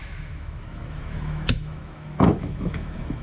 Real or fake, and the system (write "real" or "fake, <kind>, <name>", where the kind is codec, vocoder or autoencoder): fake, autoencoder, DAC-VAE